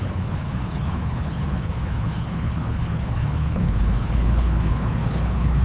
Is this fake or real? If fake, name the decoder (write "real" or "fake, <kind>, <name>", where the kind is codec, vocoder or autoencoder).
fake, codec, HILCodec